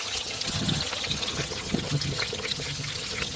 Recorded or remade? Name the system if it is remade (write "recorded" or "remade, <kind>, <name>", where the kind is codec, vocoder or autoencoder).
remade, vocoder, HiFi-GAN